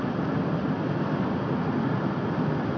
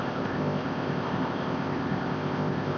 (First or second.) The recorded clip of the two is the first